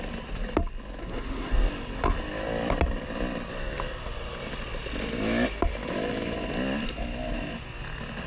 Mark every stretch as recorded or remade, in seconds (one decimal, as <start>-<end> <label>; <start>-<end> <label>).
0.0-1.0 recorded; 1.0-1.5 remade; 1.5-8.3 recorded